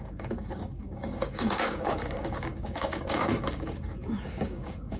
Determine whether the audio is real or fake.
fake